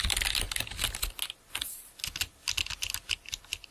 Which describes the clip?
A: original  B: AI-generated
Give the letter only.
A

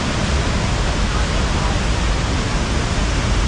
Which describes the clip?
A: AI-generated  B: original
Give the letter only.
B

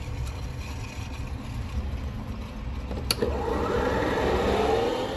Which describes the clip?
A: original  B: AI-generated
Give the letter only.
A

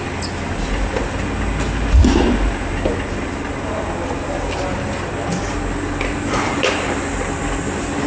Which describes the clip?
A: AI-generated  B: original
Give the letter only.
B